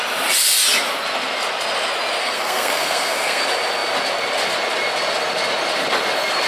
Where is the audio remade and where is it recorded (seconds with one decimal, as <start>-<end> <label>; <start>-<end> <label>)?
0.0-2.2 recorded; 2.2-3.4 remade; 3.4-6.5 recorded